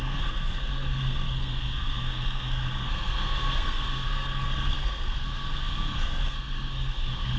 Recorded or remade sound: remade